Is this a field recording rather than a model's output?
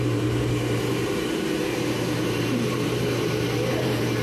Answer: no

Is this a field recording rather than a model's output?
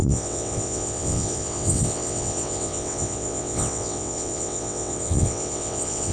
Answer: no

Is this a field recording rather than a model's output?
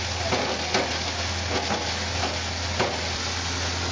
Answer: yes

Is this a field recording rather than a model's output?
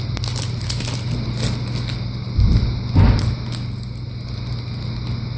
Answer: yes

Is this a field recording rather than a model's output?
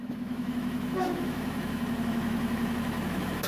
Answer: no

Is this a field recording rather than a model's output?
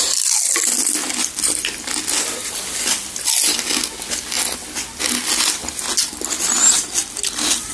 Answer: yes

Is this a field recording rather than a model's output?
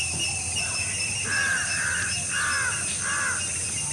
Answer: yes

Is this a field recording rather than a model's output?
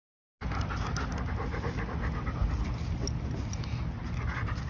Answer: yes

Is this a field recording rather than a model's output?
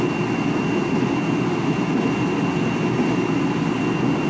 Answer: yes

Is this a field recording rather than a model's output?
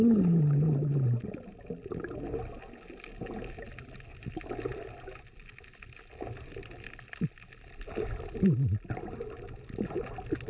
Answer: yes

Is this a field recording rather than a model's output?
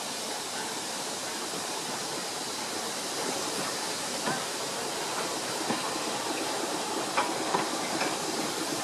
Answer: no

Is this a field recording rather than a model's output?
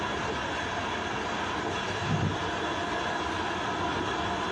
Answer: yes